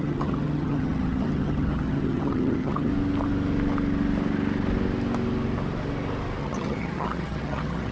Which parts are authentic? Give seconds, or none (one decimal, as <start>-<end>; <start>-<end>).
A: 2.9-6.4